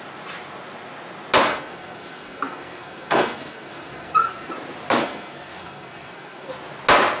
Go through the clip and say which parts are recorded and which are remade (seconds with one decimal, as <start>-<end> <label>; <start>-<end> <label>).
0.0-1.5 recorded; 1.5-4.5 remade; 4.5-5.0 recorded; 5.0-6.5 remade; 6.5-7.2 recorded